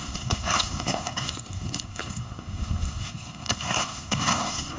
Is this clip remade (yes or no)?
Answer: yes